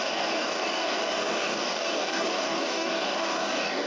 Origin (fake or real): fake